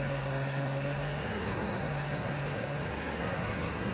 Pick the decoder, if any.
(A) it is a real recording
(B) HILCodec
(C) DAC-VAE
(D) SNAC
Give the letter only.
D